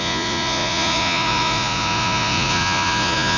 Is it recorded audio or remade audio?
remade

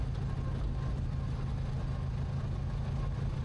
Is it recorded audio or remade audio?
recorded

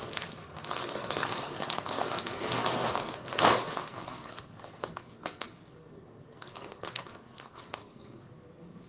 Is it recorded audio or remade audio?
remade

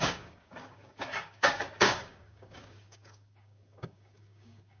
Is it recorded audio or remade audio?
remade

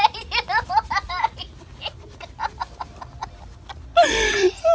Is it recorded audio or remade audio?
recorded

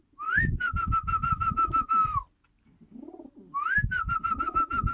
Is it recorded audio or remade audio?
recorded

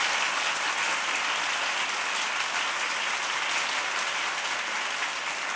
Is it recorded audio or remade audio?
recorded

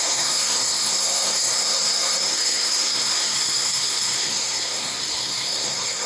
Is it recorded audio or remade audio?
remade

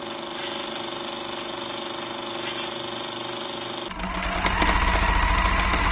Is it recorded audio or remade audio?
recorded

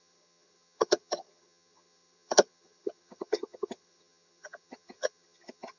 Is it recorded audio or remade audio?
remade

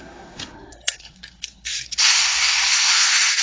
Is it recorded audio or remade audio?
remade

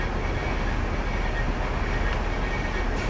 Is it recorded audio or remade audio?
recorded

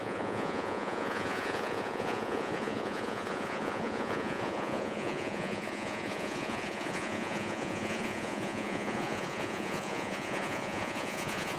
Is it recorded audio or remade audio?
remade